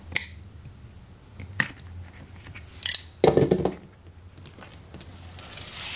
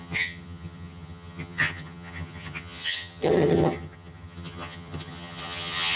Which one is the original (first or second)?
first